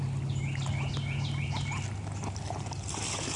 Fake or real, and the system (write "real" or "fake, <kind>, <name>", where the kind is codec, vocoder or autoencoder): real